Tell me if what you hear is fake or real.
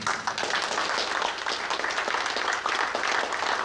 real